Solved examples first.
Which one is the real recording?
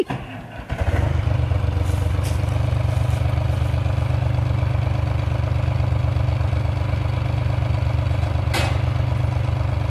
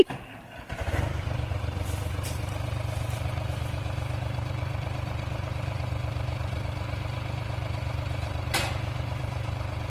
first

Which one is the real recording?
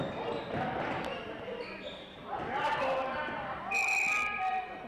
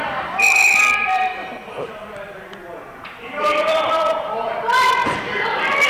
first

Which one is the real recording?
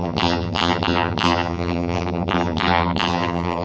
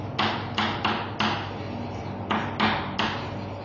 second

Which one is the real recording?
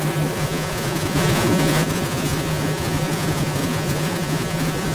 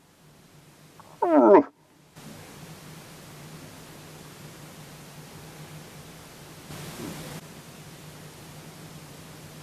second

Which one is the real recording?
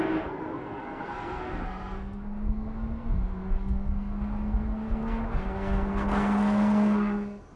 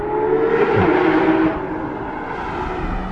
second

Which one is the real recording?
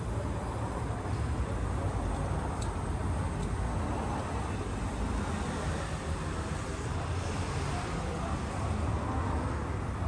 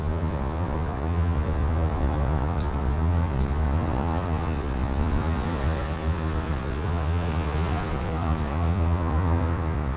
first